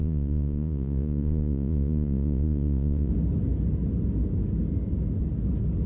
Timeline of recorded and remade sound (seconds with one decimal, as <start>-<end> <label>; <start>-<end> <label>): 0.0-3.1 remade; 3.1-5.9 recorded